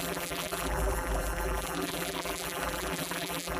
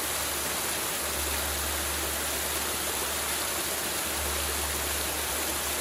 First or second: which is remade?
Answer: first